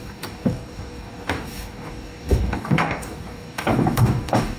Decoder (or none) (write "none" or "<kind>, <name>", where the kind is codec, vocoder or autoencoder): codec, DAC